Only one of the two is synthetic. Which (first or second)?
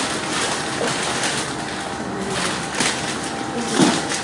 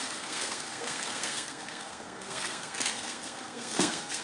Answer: second